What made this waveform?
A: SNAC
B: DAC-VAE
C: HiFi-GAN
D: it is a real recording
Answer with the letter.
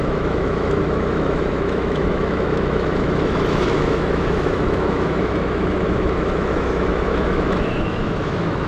B